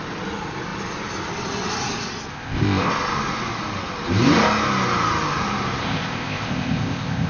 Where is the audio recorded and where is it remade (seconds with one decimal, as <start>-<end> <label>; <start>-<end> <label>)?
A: 0.0-2.3 recorded; 2.3-2.9 remade; 2.9-5.8 recorded; 5.8-7.3 remade